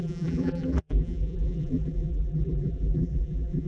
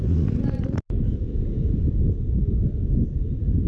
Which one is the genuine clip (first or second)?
second